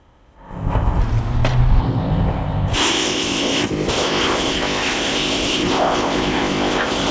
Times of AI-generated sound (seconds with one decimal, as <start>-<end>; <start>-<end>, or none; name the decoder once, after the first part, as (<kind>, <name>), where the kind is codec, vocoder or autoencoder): 0.0-1.0 (codec, ZipCodec); 1.8-7.1